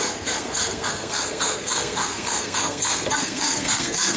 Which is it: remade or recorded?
remade